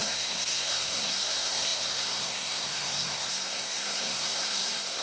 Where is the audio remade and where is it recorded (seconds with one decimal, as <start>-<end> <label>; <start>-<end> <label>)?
0.0-5.0 remade

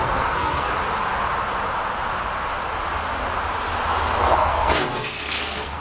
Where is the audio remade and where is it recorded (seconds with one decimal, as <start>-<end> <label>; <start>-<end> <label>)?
0.0-0.7 remade; 0.7-4.2 recorded; 4.2-5.8 remade

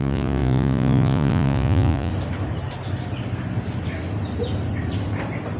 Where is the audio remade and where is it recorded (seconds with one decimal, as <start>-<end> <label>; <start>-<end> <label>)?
0.0-2.1 remade; 2.1-5.6 recorded

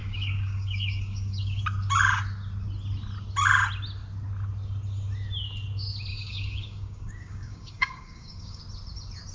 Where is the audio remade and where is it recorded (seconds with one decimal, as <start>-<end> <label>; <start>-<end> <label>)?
0.0-1.6 remade; 1.6-6.1 recorded; 6.1-8.6 remade; 8.6-9.3 recorded

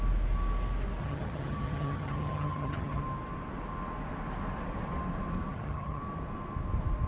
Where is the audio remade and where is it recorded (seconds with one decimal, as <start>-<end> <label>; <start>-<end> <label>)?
0.0-1.0 recorded; 1.0-3.0 remade; 3.0-5.5 recorded; 5.5-6.0 remade; 6.0-7.1 recorded